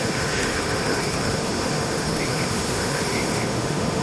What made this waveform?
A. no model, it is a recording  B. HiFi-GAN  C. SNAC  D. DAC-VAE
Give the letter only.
D